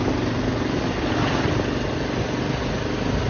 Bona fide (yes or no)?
yes